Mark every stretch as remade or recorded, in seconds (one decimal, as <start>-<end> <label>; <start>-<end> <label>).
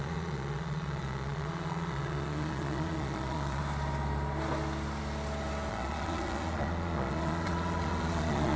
0.0-3.6 remade; 3.6-5.7 recorded; 5.7-8.6 remade